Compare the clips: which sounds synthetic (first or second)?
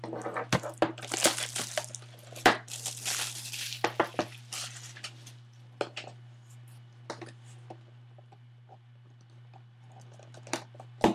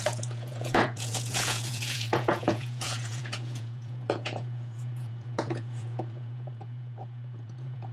second